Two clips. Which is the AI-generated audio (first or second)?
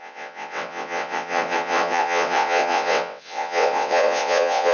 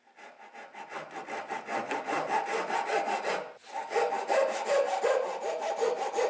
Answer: first